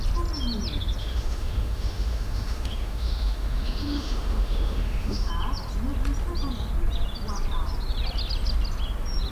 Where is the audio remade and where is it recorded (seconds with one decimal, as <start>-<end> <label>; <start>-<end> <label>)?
0.0-1.0 recorded; 1.0-5.3 remade; 5.3-9.3 recorded